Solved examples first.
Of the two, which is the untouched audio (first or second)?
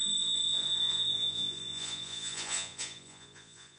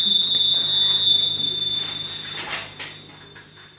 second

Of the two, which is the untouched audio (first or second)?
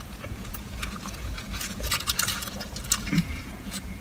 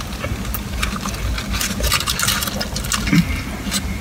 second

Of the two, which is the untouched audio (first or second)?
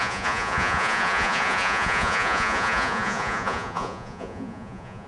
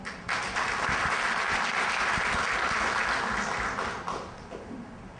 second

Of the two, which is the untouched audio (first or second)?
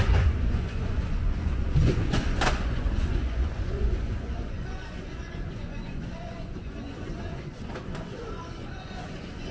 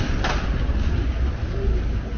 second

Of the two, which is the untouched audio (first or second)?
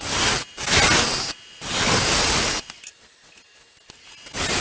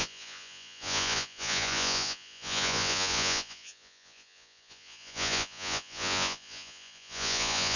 first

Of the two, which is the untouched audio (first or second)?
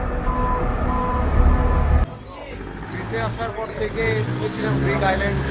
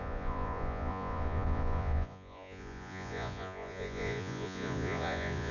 first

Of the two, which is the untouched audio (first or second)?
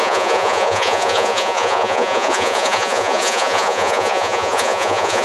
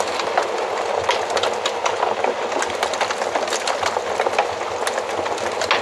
second